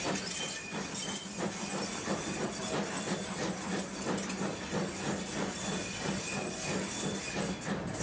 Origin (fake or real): real